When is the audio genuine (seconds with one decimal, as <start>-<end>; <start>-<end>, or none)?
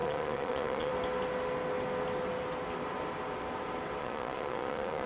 0.9-4.0